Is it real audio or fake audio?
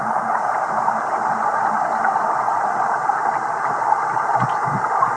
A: real